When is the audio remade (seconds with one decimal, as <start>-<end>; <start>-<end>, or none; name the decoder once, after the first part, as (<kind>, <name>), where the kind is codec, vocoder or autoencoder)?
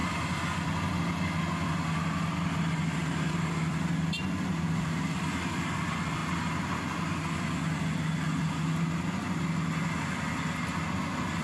none